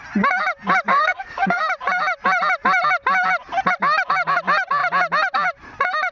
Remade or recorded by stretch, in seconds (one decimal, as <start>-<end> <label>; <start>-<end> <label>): 0.0-0.9 recorded; 0.9-1.6 remade; 1.6-6.1 recorded